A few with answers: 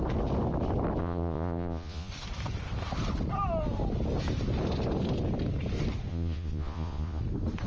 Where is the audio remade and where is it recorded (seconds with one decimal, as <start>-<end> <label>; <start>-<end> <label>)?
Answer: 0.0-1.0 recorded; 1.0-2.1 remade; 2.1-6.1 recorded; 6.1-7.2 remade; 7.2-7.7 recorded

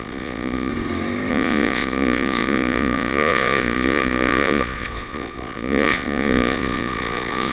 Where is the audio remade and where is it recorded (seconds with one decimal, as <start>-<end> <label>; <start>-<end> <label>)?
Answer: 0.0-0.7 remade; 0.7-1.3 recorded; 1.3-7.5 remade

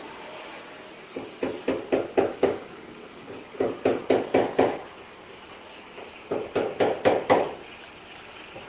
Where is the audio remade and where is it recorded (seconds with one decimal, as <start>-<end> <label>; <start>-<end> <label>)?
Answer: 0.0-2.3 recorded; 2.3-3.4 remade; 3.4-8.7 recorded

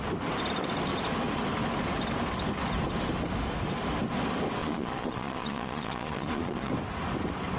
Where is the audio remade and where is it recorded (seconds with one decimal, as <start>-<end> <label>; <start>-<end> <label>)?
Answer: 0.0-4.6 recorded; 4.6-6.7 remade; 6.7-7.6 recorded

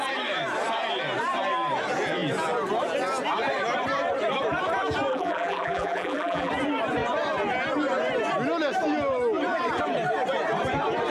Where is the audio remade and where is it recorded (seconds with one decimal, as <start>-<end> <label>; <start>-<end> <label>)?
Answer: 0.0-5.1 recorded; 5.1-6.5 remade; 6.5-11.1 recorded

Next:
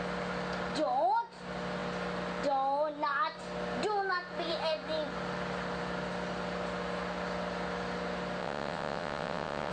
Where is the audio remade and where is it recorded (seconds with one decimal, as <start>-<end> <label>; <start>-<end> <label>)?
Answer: 0.0-8.4 recorded; 8.4-9.7 remade